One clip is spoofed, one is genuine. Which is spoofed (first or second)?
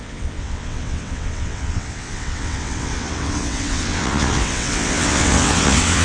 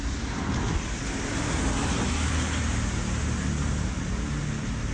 first